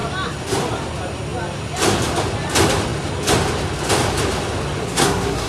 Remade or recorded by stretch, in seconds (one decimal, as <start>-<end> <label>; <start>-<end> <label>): 0.0-4.8 recorded; 4.8-5.5 remade